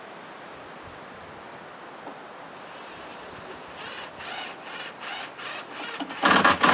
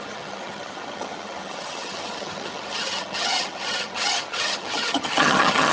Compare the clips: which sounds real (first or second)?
first